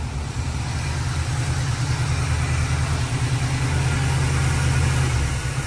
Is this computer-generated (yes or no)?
no